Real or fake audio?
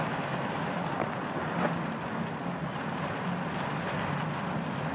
real